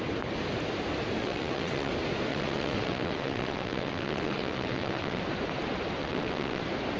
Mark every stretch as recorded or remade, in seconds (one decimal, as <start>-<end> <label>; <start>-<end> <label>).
0.0-1.2 recorded; 1.2-1.9 remade; 1.9-2.3 recorded; 2.3-5.2 remade; 5.2-6.0 recorded; 6.0-6.6 remade; 6.6-7.0 recorded